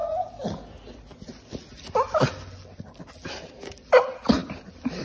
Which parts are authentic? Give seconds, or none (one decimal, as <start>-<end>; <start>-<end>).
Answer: 0.0-3.0; 4.4-5.0